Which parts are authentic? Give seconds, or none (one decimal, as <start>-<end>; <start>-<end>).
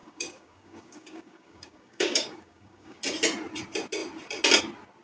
3.0-5.0